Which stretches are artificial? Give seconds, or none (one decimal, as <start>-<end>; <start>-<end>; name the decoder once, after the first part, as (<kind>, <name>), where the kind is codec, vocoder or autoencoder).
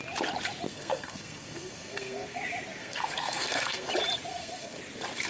0.7-2.4 (codec, SNAC); 2.8-3.9; 4.3-4.8